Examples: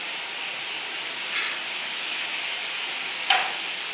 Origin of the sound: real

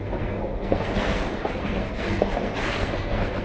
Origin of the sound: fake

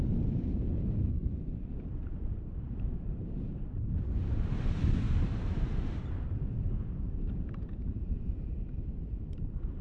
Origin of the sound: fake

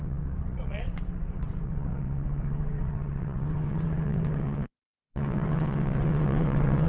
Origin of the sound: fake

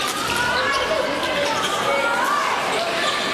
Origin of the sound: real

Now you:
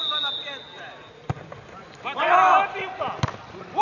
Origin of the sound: real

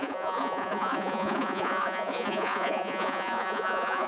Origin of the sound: fake